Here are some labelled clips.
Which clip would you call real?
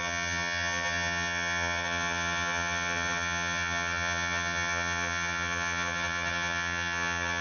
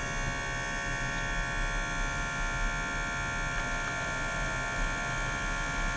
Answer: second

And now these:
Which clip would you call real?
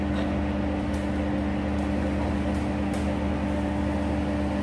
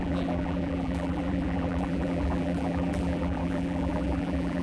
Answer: first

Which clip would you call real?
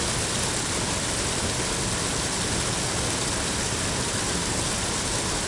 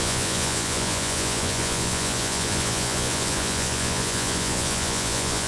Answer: first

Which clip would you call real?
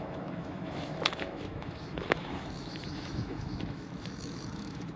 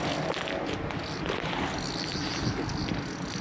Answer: second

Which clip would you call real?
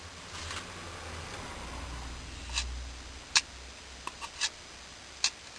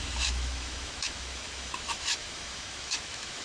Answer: first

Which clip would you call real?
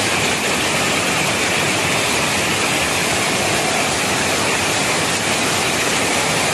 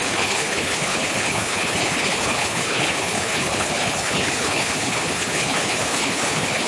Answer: first